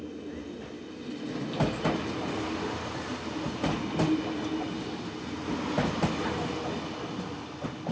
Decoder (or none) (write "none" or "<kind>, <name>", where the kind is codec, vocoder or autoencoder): none